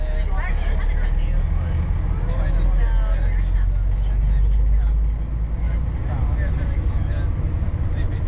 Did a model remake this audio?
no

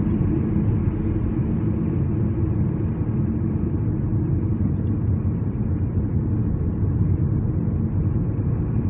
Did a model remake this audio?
no